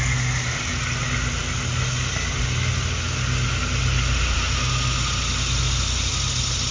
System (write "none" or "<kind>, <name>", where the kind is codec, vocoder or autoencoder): none